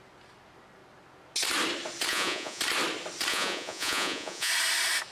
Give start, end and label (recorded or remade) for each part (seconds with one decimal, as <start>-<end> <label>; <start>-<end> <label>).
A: 0.0-2.1 recorded; 2.1-2.6 remade; 2.6-3.3 recorded; 3.3-4.5 remade; 4.5-5.1 recorded